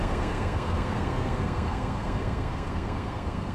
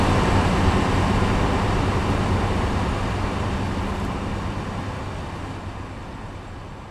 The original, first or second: second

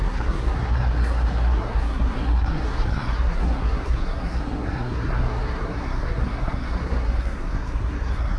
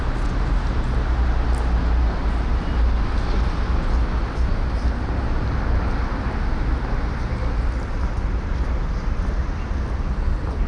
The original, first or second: second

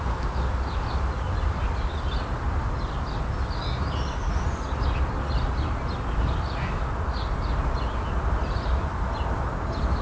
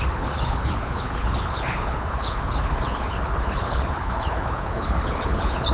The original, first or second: first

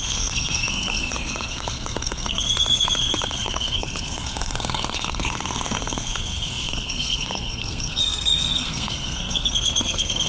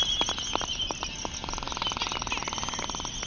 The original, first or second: second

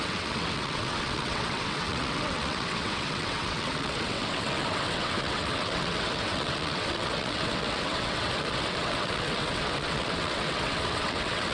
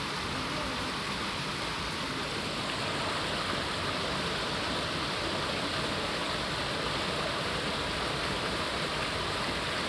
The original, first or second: second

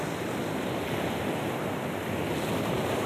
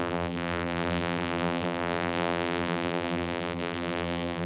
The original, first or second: first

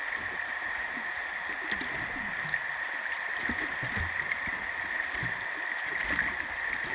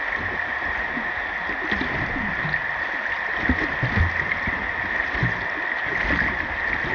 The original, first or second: second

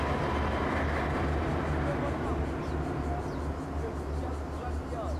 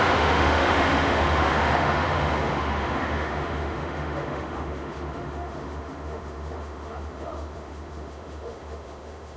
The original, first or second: first